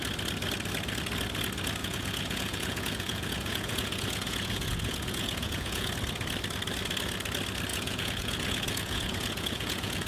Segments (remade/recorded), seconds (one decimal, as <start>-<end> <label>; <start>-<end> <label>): 0.0-1.8 recorded; 1.8-5.9 remade; 5.9-7.7 recorded; 7.7-10.1 remade